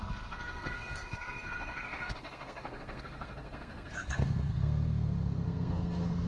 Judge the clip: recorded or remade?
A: remade